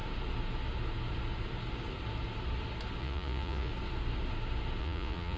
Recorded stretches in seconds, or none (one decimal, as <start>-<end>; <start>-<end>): 0.0-3.0; 3.7-4.8